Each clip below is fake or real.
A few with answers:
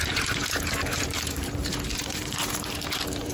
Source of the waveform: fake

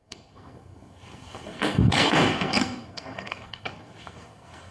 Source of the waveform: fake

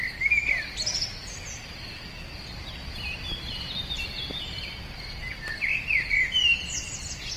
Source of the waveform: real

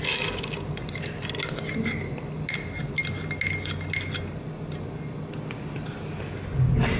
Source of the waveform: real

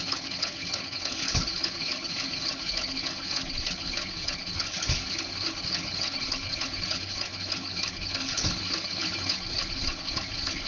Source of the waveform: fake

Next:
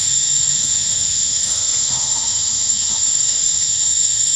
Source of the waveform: fake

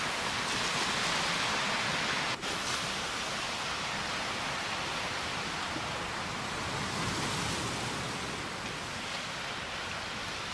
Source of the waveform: real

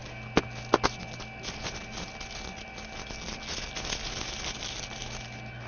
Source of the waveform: real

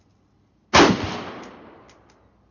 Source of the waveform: real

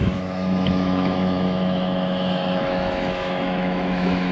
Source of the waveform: fake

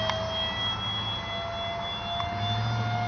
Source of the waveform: real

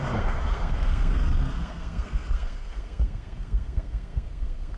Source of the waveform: fake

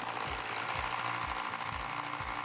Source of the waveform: real